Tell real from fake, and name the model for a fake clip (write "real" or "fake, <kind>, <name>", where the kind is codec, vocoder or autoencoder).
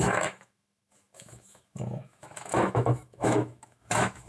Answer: fake, autoencoder, DAC-VAE